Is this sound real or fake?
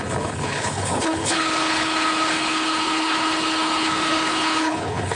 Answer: fake